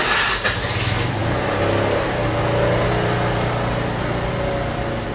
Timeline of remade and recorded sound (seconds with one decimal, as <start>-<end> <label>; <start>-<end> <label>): 0.0-5.1 recorded